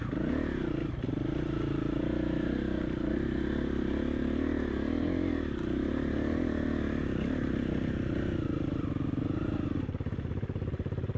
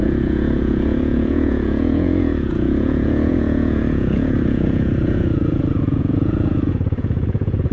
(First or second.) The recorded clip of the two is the first